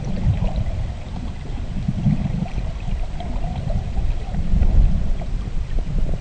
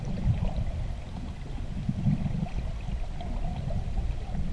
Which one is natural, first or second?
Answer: second